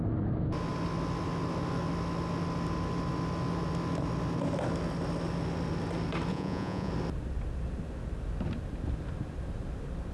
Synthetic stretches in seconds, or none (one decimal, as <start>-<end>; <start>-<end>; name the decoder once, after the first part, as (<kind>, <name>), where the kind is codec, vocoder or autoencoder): 6.3-6.9 (vocoder, Vocos)